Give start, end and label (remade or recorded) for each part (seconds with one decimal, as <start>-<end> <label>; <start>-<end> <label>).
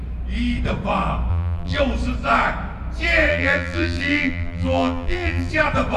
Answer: 0.0-1.3 recorded; 1.3-1.8 remade; 1.8-3.3 recorded; 3.3-5.5 remade; 5.5-6.0 recorded